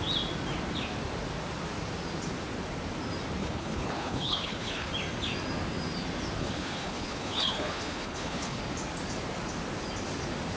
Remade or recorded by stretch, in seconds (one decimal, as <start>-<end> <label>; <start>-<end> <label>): 0.0-3.4 recorded; 3.4-4.9 remade; 4.9-6.4 recorded; 6.4-8.6 remade; 8.6-10.6 recorded

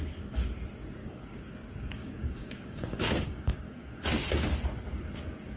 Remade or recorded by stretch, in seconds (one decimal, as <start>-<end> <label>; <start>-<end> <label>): 0.0-1.0 recorded; 1.0-4.0 remade; 4.0-5.6 recorded

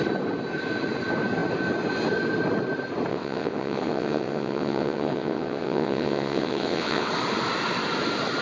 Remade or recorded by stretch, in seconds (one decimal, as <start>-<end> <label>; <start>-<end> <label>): 0.0-3.1 recorded; 3.1-7.1 remade; 7.1-8.4 recorded